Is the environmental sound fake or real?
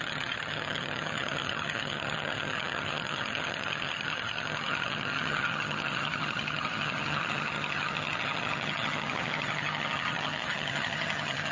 fake